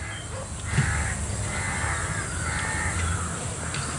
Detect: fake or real real